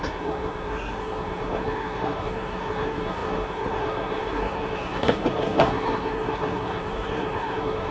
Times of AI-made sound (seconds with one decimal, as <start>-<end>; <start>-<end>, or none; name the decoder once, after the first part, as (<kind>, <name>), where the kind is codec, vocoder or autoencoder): 0.0-7.9 (codec, SNAC)